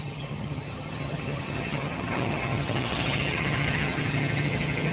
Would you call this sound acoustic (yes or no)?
no